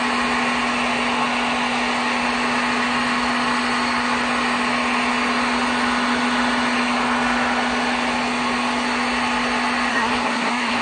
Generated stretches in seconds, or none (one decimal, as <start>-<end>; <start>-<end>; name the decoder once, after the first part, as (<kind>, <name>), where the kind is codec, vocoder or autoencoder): 9.9-10.8 (codec, SNAC)